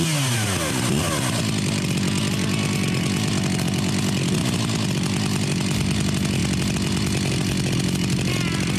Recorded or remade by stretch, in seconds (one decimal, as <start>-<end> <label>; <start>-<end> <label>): 0.0-8.8 recorded

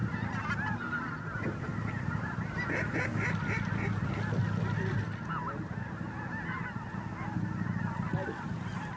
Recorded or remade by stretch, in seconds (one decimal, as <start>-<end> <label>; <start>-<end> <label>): 0.0-1.7 recorded; 1.7-2.6 remade; 2.6-9.0 recorded

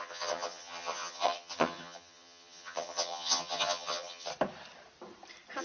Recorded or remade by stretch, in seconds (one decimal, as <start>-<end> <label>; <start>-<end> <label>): 0.0-4.3 remade; 4.3-5.6 recorded